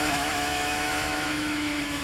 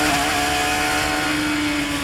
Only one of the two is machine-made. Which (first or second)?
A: first